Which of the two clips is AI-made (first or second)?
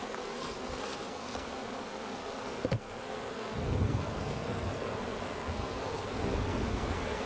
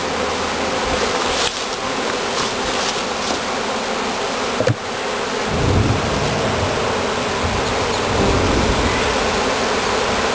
first